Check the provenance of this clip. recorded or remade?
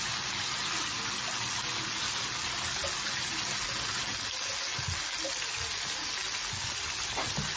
recorded